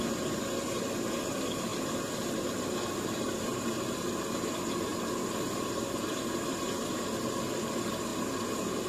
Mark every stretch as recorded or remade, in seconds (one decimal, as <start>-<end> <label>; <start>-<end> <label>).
0.0-3.5 recorded; 3.5-4.1 remade; 4.1-8.9 recorded